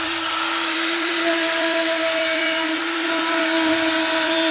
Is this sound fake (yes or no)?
yes